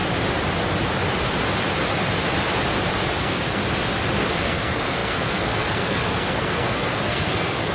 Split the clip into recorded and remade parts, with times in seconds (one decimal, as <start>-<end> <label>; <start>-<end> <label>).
0.0-3.2 recorded; 3.2-3.6 remade; 3.6-4.4 recorded; 4.4-7.7 remade